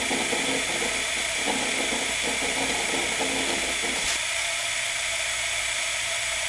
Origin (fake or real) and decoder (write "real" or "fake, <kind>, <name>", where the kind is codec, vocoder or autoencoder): real